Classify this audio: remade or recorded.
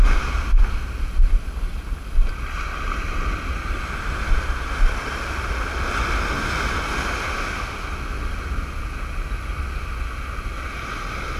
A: recorded